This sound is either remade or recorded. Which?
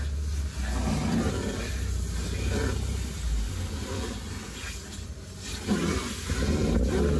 recorded